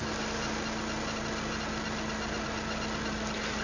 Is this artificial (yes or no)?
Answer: no